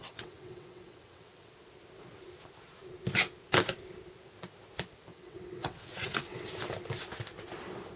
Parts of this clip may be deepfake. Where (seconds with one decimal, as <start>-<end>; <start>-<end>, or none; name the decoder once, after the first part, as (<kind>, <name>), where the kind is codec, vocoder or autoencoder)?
0.0-1.5 (vocoder, WaveNeXt); 5.1-6.5